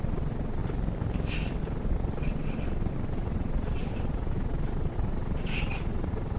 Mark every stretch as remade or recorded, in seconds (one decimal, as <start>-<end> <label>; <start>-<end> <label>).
0.0-0.6 remade; 0.6-1.6 recorded; 1.6-6.4 remade